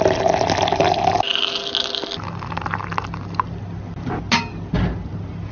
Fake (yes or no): no